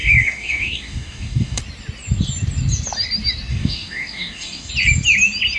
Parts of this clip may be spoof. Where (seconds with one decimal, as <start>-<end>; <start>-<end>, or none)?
0.0-1.6; 3.5-4.7

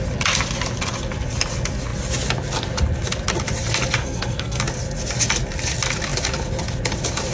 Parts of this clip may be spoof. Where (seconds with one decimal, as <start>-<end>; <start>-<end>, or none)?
4.0-4.6

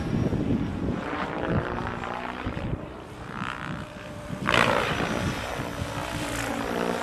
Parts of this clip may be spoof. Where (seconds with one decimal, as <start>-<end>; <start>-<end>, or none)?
0.7-4.9

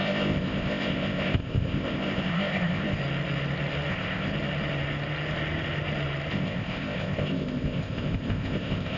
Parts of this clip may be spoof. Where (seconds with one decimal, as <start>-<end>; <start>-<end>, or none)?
0.0-3.0; 3.9-4.3; 6.3-9.0

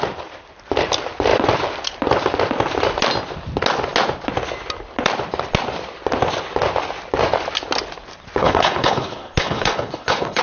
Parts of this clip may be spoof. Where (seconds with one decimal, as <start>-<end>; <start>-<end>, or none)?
8.4-10.4

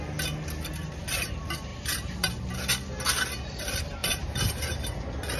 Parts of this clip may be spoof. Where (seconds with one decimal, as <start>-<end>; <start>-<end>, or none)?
1.7-2.5; 4.0-5.0

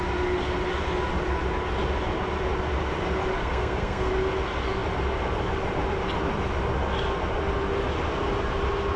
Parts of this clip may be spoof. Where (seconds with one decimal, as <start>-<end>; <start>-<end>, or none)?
3.4-4.1